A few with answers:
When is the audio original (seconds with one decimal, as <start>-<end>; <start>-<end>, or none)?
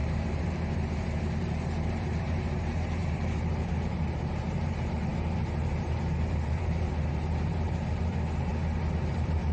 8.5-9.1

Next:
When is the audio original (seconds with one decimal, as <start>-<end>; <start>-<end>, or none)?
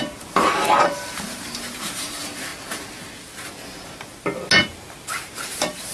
2.5-5.1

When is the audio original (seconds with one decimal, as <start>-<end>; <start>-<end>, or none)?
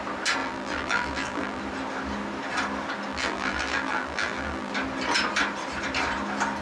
0.0-0.4; 1.6-3.1; 4.7-6.6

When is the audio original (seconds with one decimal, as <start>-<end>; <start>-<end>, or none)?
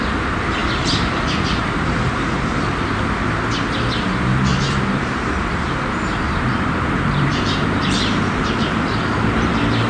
0.0-0.6; 2.6-4.5; 9.5-9.9